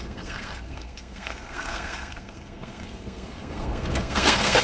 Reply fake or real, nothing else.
fake